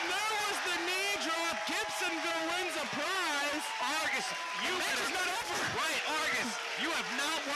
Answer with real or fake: real